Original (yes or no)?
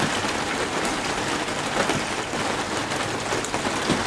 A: yes